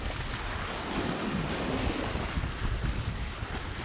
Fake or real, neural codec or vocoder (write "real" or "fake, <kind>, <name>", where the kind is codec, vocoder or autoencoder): real